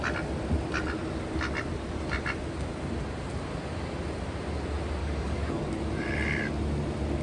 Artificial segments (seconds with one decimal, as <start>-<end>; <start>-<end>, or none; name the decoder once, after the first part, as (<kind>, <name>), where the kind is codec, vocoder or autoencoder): 5.0-5.7 (codec, DAC)